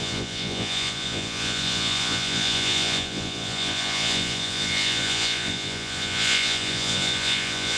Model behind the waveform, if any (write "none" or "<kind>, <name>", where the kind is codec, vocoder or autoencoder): vocoder, Vocos